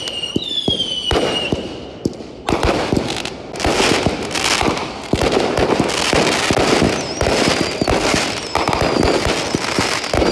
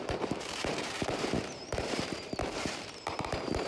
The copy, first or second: second